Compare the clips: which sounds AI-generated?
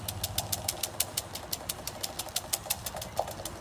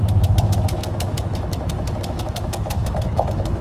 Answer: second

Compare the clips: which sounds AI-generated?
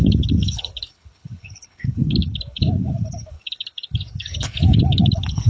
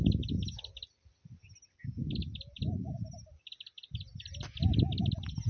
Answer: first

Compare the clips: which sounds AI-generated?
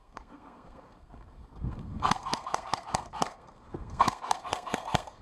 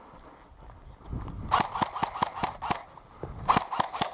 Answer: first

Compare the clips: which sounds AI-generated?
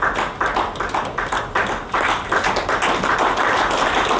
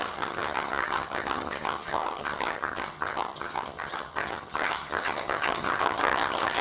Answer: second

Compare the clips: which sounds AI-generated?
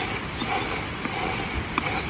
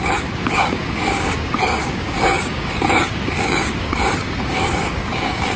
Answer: second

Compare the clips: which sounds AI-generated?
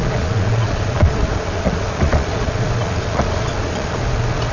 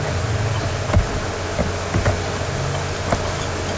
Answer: first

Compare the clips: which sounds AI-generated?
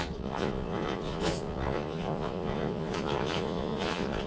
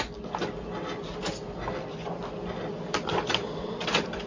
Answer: first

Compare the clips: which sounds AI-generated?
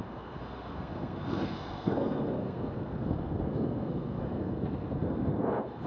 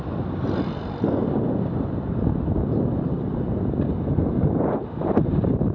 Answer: first